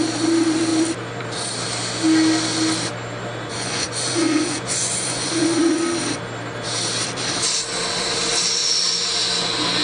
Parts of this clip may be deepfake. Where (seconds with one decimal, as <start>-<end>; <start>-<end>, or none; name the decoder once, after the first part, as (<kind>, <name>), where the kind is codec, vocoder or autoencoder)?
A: 3.5-5.7 (vocoder, Vocos)